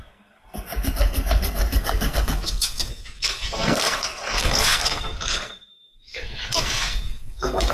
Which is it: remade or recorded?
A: remade